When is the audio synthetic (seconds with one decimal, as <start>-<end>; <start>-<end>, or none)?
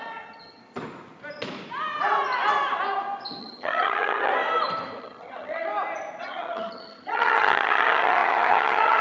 0.0-0.6; 3.4-4.3; 5.0-5.7; 6.2-9.0